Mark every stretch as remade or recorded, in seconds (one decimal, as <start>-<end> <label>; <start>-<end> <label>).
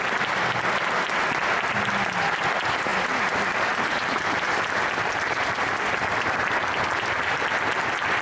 0.0-8.2 recorded